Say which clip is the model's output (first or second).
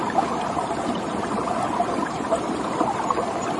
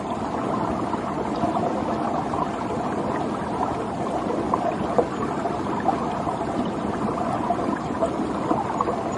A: first